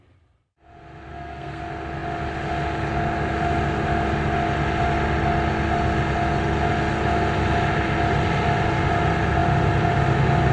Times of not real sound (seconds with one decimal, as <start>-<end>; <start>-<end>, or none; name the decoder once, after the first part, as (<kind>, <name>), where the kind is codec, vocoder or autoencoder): 1.1-1.6 (codec, SNAC)